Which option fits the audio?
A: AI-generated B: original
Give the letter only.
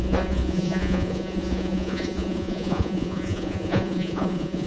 A